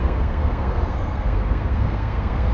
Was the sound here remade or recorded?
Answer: remade